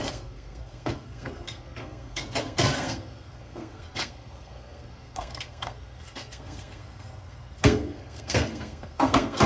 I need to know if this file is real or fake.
fake